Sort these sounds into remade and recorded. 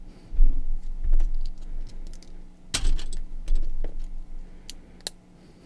recorded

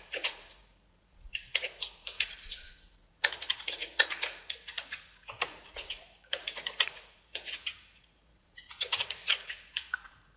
remade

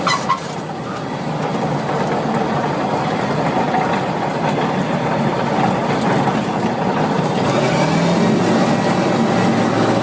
recorded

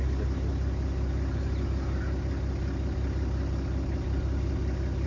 recorded